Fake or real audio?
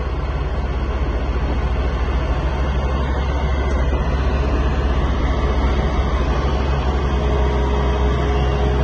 real